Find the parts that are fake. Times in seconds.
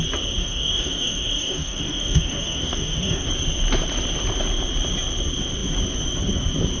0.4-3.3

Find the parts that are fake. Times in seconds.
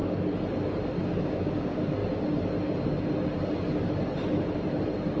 1.1-2.0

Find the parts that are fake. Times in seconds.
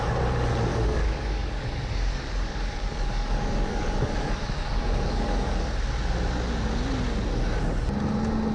0.7-5.6